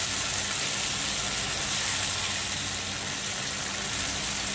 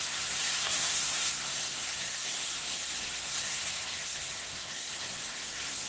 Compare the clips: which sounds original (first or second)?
first